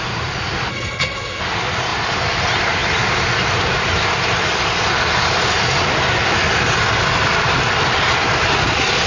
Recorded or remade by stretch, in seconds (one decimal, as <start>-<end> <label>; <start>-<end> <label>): 0.0-0.7 recorded; 0.7-1.4 remade; 1.4-9.1 recorded